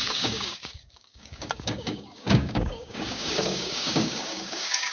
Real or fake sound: fake